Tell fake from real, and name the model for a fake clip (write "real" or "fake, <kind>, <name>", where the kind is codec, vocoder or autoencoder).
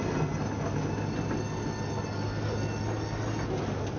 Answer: real